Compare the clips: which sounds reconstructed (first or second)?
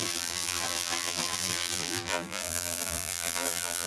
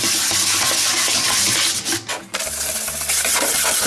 first